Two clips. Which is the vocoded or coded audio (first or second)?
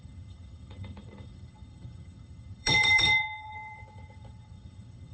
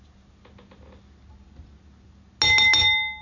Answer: first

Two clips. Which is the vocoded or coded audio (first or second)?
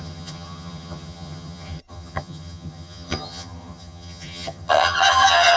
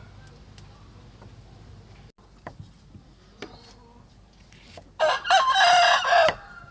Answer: first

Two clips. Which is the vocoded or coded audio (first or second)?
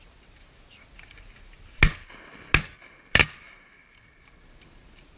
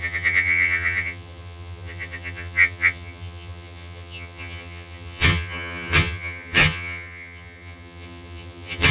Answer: second